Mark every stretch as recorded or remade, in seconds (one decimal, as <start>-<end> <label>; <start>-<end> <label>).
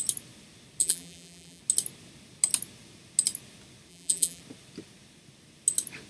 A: 0.0-0.8 recorded; 0.8-1.6 remade; 1.6-3.9 recorded; 3.9-4.4 remade; 4.4-6.1 recorded